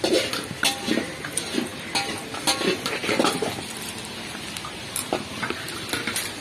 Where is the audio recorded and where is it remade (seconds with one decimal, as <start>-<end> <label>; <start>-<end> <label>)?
0.0-6.4 recorded